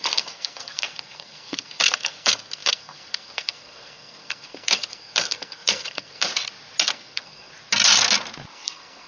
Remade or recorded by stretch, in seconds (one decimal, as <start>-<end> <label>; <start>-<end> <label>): 0.0-6.3 remade; 6.3-6.9 recorded; 6.9-7.5 remade; 7.5-8.5 recorded; 8.5-9.1 remade